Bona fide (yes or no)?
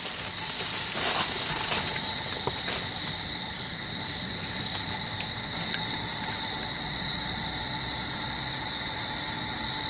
yes